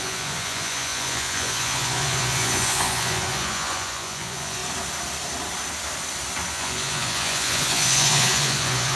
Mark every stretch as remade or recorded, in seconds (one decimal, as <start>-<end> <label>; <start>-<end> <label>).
0.0-4.6 remade; 4.6-6.5 recorded; 6.5-9.0 remade